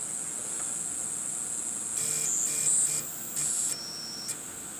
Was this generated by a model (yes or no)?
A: no